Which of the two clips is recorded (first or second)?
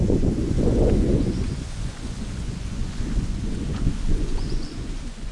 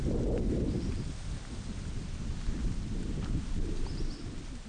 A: second